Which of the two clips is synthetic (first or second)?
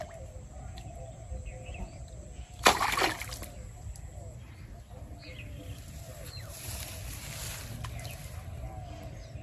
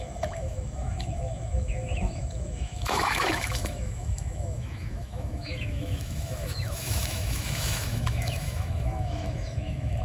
second